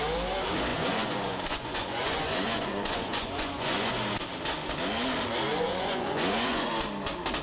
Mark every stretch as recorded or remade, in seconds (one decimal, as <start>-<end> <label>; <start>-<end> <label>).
0.0-0.7 recorded; 0.7-3.9 remade; 3.9-5.5 recorded; 5.5-6.7 remade; 6.7-7.4 recorded